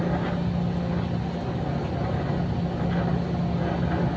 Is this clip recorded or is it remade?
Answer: recorded